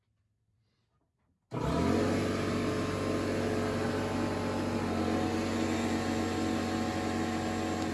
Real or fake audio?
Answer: real